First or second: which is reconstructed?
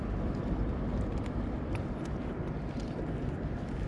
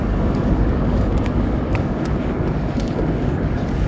second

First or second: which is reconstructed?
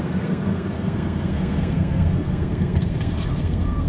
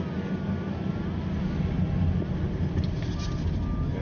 first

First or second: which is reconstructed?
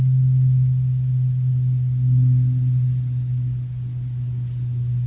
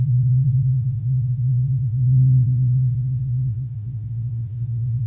second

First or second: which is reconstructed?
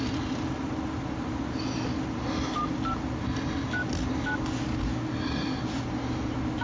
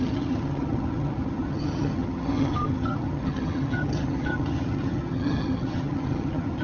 second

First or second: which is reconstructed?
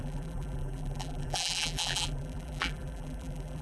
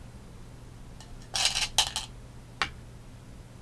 first